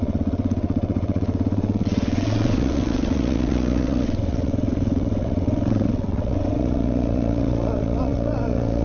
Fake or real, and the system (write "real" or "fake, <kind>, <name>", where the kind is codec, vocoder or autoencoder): fake, vocoder, WaveNeXt